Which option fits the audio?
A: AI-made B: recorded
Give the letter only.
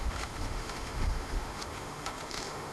A